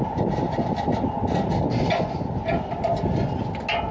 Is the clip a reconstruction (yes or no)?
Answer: no